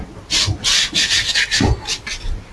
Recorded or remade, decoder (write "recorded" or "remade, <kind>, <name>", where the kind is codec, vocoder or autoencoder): recorded